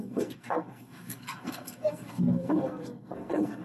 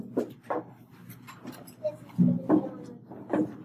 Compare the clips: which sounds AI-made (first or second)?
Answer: first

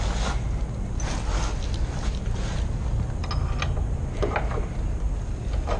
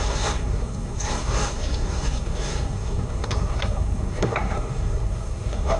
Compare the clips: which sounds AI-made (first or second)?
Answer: second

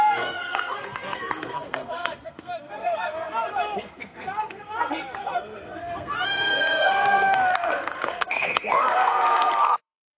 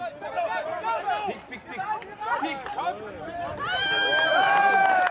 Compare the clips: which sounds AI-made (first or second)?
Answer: first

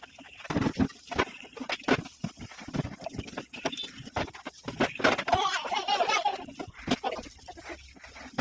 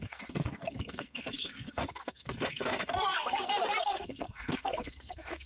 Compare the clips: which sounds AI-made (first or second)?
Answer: second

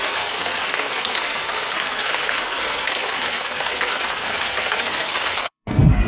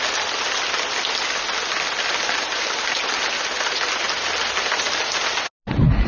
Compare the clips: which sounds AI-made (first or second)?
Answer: first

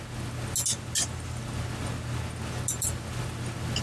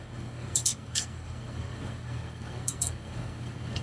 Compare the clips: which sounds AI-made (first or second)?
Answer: second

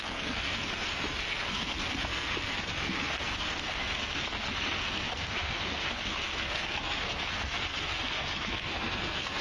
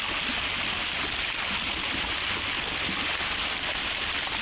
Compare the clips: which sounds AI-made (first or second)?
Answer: first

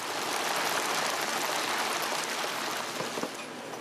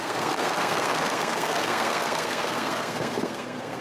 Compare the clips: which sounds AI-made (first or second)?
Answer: second